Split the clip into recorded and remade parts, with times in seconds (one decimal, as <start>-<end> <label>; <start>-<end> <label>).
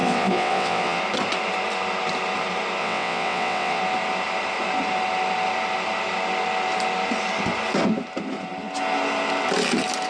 0.0-1.0 remade; 1.0-2.8 recorded; 2.8-3.8 remade; 3.8-10.1 recorded